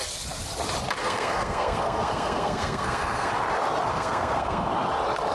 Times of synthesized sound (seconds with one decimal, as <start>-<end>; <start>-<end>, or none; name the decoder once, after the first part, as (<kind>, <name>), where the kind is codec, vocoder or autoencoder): 1.0-3.3 (codec, SNAC); 3.9-4.7